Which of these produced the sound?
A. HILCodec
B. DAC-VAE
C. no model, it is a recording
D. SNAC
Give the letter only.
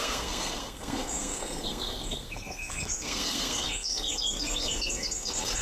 D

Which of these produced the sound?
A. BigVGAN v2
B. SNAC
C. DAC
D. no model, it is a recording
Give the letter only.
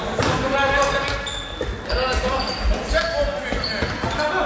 D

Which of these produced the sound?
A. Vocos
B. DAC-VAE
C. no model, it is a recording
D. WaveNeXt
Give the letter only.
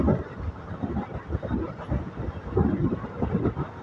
C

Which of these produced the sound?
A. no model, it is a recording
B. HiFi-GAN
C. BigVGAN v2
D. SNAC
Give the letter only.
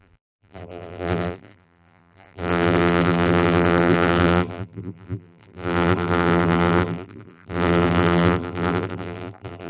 C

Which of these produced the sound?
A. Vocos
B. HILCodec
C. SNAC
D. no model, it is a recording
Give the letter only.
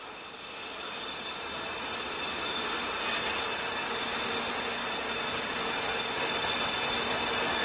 D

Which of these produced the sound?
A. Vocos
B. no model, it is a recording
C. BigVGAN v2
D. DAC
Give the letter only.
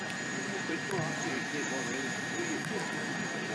C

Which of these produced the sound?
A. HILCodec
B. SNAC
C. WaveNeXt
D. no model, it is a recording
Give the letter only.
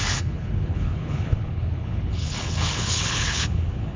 A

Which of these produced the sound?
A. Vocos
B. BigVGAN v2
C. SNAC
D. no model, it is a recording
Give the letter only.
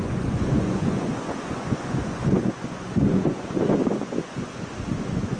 A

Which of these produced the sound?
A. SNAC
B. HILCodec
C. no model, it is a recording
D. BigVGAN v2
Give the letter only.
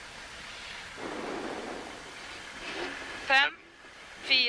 C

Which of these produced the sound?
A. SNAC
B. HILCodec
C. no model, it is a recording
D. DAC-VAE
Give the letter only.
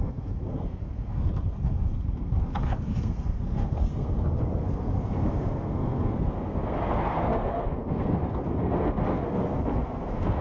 A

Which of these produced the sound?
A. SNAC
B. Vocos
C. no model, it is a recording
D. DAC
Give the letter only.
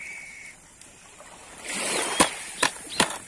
C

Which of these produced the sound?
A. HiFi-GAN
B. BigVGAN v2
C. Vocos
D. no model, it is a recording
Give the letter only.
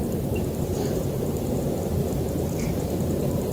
B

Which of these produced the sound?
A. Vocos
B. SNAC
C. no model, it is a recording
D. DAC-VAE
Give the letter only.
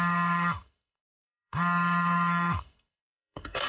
B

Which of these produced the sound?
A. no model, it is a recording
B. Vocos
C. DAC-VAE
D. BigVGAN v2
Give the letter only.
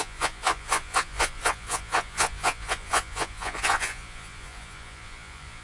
B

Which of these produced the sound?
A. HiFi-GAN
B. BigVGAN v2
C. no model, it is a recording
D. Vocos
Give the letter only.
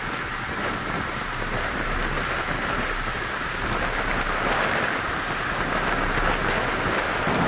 C